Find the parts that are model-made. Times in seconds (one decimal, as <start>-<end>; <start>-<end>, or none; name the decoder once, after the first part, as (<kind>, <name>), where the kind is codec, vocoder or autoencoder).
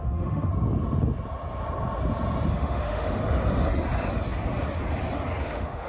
0.0-0.5 (autoencoder, DAC-VAE); 2.5-3.2; 5.4-5.9